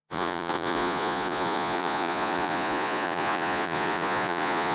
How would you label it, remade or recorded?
remade